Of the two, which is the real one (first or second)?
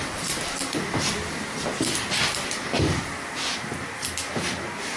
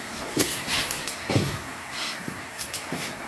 first